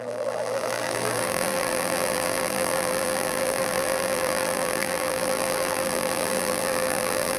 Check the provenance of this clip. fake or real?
fake